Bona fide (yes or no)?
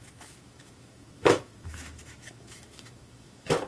no